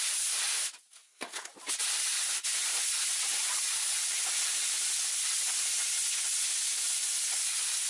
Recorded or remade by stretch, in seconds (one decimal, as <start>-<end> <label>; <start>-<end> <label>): 0.0-1.0 recorded; 1.0-1.5 remade; 1.5-7.9 recorded